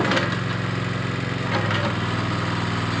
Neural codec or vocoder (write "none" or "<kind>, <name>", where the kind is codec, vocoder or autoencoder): none